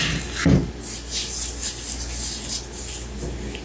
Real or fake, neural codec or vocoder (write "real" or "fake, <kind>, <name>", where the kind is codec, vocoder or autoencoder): real